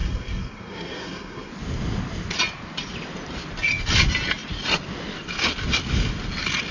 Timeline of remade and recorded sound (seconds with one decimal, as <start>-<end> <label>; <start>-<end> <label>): 0.0-1.5 remade; 1.5-6.7 recorded